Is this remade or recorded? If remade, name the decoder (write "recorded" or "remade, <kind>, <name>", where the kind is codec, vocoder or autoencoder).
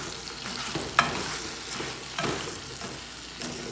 recorded